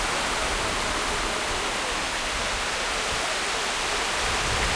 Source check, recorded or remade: recorded